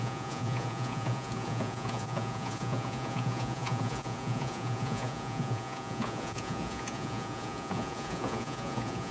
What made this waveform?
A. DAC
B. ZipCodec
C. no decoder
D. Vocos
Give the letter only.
D